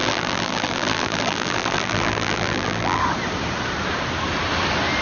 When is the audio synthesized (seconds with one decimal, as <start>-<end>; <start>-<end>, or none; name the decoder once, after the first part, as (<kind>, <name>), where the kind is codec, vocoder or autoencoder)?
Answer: 0.0-3.0 (vocoder, BigVGAN v2)